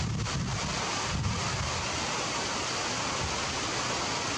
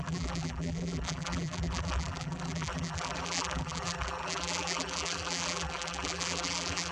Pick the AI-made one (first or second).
second